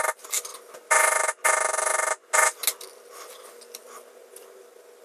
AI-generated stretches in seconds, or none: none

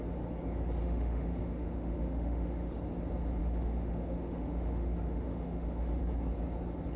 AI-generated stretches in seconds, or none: 0.8-2.8 (autoencoder, DAC-VAE); 3.4-6.0

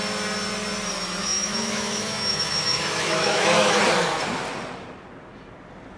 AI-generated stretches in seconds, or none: 1.2-3.8 (autoencoder, DAC-VAE)